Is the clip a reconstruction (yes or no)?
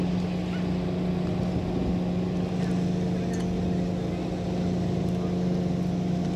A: no